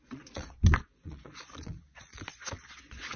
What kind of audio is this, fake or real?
fake